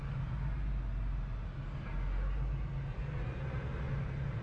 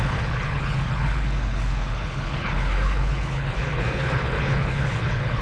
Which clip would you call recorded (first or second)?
first